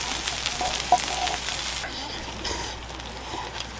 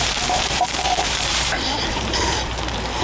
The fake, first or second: second